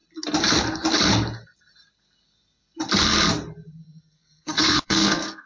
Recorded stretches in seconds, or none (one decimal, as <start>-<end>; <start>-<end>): 0.0-3.8